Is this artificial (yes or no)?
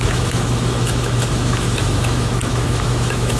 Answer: yes